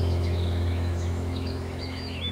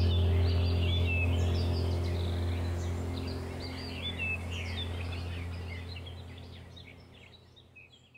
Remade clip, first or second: first